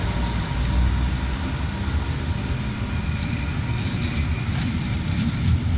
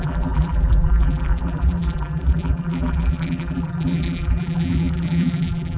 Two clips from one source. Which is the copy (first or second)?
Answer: second